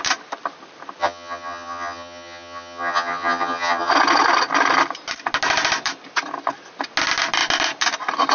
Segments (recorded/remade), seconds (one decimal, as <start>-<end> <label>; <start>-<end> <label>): 0.0-1.0 recorded; 1.0-3.9 remade; 3.9-8.3 recorded